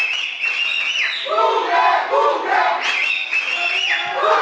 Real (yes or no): yes